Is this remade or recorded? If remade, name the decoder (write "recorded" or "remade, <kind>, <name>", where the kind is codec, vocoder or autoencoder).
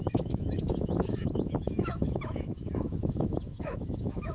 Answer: remade, autoencoder, DAC-VAE